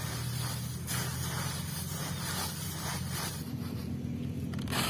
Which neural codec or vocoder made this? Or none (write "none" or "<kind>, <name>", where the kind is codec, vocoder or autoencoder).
vocoder, BigVGAN v2